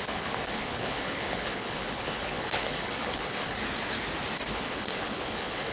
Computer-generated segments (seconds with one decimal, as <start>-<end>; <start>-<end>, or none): 0.0-3.6; 4.5-5.7